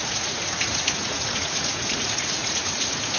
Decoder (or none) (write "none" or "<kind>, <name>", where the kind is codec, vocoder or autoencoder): vocoder, Vocos